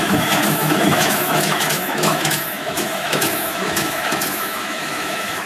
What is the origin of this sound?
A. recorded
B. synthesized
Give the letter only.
B